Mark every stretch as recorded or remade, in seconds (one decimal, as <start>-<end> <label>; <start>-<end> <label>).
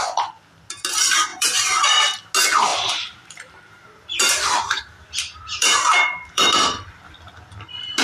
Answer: 0.0-1.3 recorded; 1.3-2.3 remade; 2.3-2.7 recorded; 2.7-6.6 remade; 6.6-8.0 recorded